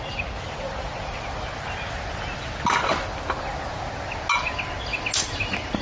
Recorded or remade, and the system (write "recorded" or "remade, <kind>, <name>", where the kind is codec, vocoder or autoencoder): recorded